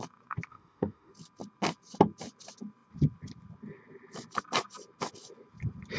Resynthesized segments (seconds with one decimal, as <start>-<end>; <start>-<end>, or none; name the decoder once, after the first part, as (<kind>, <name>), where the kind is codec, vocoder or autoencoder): 0.5-1.1 (autoencoder, DAC-VAE)